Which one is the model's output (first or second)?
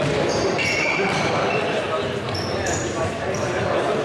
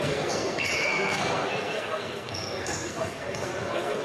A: second